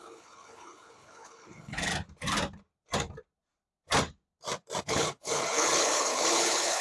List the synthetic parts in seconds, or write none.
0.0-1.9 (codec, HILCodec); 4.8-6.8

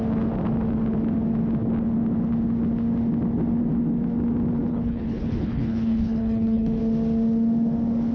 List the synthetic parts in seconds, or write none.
4.7-6.8 (codec, HILCodec)